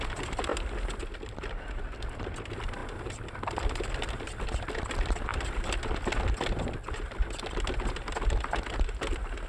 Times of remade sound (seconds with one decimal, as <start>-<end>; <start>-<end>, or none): none